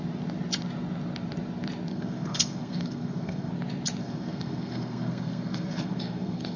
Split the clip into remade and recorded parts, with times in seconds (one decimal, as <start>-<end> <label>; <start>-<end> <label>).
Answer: 0.0-1.9 recorded; 1.9-3.5 remade; 3.5-4.0 recorded; 4.0-6.6 remade